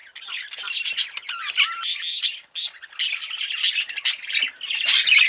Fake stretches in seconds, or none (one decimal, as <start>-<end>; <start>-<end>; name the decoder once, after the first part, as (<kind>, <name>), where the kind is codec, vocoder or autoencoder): none